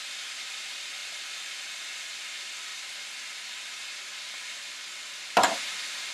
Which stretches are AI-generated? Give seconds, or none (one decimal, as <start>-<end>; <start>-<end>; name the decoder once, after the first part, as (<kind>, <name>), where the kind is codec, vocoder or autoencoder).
none